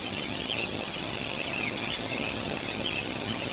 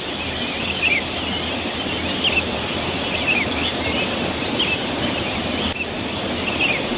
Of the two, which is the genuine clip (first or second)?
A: second